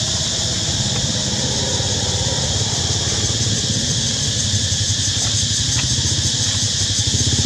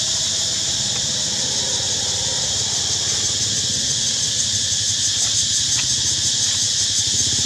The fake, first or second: first